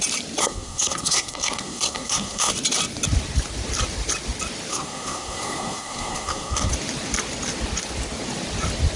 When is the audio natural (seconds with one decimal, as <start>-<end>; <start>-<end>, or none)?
0.0-0.4; 2.5-4.7; 6.7-9.0